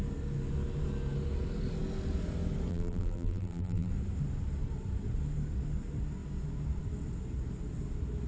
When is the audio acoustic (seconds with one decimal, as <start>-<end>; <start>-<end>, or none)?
0.0-2.7; 3.9-8.3